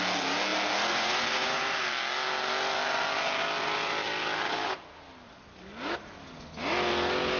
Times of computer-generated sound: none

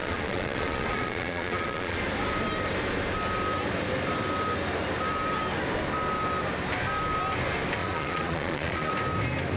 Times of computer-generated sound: 0.0-2.0 (vocoder, Vocos); 7.8-8.9

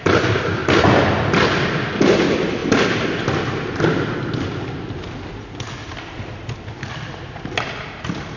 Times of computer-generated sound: none

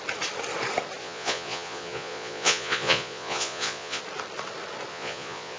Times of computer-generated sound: 1.0-4.0 (vocoder, Vocos); 4.9-5.6